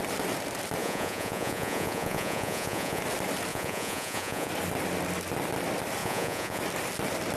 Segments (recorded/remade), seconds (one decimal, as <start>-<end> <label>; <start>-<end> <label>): 0.0-0.8 recorded; 0.8-3.0 remade; 3.0-3.5 recorded; 3.5-4.5 remade; 4.5-6.0 recorded; 6.0-6.6 remade; 6.6-7.4 recorded